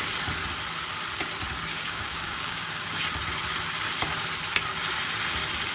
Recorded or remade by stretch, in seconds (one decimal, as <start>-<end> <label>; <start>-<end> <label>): 0.0-1.7 recorded; 1.7-3.0 remade; 3.0-5.7 recorded